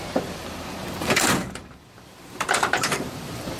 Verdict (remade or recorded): remade